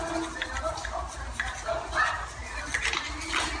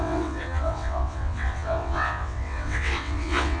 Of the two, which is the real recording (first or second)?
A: first